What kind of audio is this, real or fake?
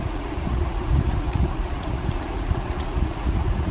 fake